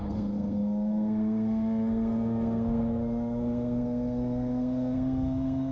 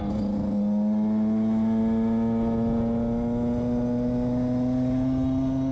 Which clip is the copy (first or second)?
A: first